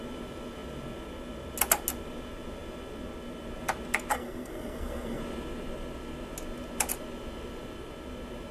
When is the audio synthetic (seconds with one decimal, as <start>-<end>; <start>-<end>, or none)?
4.1-5.2